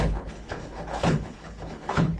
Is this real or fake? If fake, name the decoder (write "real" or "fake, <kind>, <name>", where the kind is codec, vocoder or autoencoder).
fake, codec, HILCodec